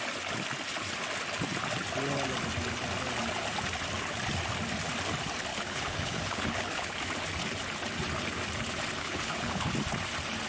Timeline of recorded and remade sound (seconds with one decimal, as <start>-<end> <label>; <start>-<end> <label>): 0.0-5.5 recorded; 5.5-6.9 remade; 6.9-9.0 recorded; 9.0-9.7 remade; 9.7-10.5 recorded